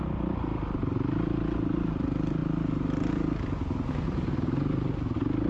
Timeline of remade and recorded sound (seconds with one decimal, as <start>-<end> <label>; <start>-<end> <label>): 0.0-5.5 recorded